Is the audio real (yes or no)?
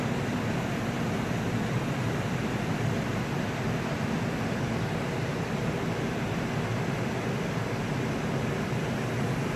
yes